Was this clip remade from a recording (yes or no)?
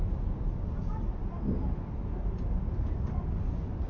no